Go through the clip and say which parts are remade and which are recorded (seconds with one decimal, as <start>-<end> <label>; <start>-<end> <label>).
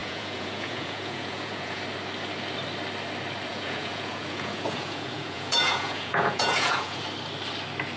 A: 0.0-1.8 remade; 1.8-3.5 recorded; 3.5-7.0 remade; 7.0-8.0 recorded